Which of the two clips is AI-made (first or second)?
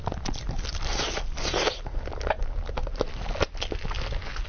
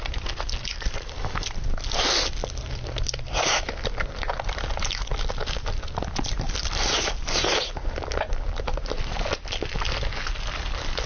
second